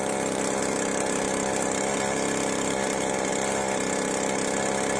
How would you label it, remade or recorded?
recorded